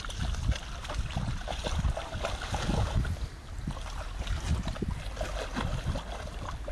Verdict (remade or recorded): recorded